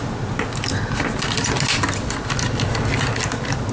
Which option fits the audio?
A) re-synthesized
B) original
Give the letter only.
B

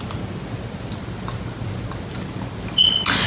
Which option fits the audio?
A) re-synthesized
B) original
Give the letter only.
B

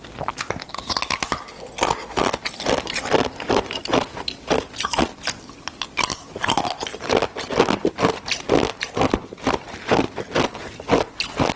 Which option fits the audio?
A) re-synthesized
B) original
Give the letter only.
B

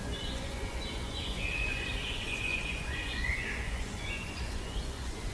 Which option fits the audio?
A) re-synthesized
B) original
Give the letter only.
A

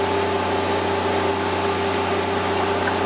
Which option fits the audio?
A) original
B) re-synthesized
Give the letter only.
A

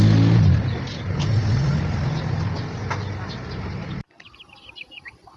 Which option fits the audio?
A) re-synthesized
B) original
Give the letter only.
B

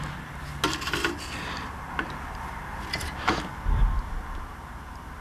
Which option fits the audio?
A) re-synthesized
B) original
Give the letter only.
B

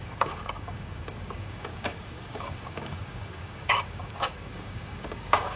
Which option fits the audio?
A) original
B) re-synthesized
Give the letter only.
B